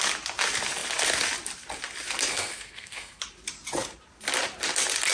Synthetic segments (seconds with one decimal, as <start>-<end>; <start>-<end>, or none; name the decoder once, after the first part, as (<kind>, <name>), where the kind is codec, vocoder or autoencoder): 2.3-3.2 (codec, SNAC)